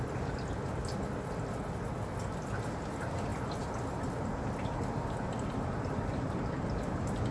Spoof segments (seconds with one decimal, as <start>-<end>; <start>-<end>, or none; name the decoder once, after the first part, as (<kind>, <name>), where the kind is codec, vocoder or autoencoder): none